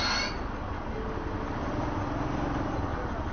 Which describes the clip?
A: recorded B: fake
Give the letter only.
A